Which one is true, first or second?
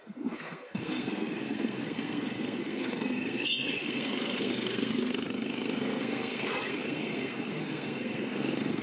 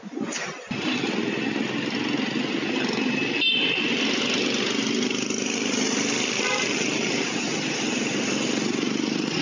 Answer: second